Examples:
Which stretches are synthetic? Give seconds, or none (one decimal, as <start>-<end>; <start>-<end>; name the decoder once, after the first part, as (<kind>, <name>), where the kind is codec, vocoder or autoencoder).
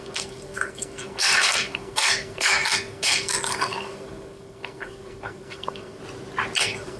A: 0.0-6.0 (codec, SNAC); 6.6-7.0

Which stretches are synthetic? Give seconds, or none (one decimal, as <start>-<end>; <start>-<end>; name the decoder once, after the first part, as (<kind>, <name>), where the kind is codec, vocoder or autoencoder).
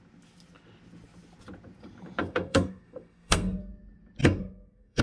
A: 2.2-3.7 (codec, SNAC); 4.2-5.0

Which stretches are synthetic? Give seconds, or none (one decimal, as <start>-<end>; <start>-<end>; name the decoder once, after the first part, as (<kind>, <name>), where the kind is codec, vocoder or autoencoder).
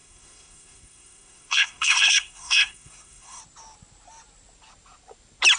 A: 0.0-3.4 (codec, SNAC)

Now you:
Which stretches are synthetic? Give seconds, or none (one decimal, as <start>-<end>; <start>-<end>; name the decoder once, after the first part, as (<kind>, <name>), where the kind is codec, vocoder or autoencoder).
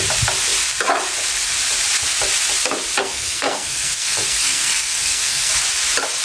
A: 3.0-5.5 (codec, SNAC)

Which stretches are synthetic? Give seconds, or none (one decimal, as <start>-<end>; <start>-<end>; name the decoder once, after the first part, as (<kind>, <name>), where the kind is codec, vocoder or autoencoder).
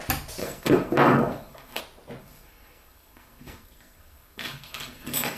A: 0.4-1.8 (codec, SNAC); 2.2-5.4